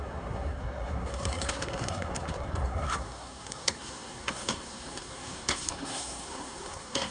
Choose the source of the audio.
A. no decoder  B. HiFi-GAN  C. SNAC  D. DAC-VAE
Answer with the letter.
C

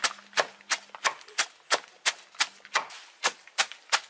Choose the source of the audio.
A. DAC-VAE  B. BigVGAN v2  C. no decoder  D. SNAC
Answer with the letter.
C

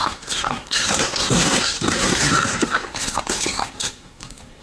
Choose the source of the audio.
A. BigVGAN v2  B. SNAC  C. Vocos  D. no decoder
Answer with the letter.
B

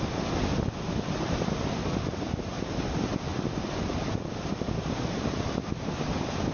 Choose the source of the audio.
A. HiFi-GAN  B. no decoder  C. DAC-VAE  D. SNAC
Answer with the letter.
B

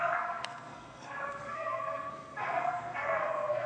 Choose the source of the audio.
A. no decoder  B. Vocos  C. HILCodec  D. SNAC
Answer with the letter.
D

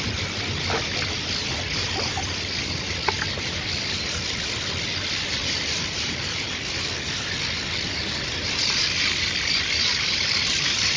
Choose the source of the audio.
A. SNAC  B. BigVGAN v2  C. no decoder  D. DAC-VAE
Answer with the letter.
C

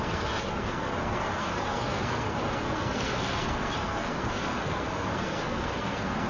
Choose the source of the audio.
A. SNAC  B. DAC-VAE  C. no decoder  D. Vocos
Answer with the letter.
A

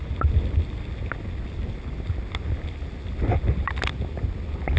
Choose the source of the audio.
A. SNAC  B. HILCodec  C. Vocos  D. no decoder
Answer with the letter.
D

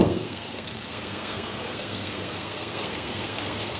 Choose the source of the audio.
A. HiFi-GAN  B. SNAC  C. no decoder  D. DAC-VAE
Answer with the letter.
B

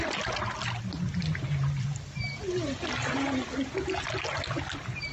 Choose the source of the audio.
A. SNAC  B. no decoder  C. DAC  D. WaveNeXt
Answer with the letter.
B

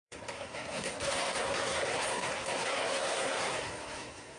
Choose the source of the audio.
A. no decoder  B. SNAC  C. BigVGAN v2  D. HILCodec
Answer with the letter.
B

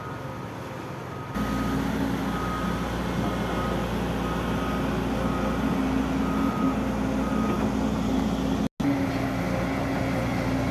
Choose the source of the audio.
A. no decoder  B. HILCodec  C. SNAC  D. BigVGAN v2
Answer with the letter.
A